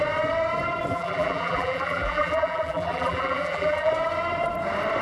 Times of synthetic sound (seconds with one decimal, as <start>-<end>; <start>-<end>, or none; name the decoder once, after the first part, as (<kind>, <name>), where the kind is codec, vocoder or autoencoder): 0.9-3.9 (vocoder, BigVGAN v2)